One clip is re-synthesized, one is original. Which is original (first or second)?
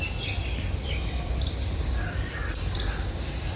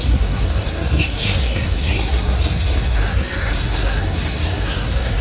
first